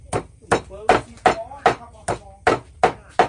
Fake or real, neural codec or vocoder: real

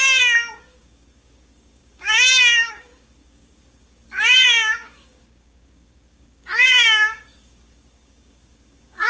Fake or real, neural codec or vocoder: fake, codec, DAC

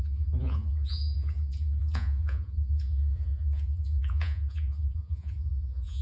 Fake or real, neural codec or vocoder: fake, vocoder, Vocos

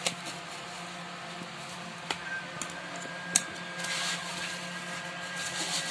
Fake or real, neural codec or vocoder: real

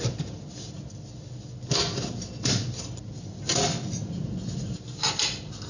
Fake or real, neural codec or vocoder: real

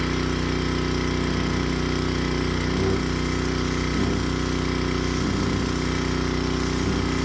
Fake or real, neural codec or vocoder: real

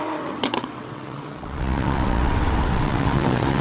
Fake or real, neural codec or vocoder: fake, vocoder, WaveNeXt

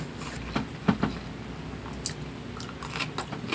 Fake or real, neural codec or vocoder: real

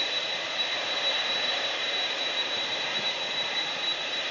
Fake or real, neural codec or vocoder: fake, vocoder, BigVGAN v2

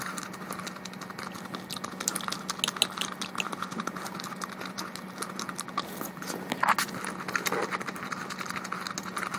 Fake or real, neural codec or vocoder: real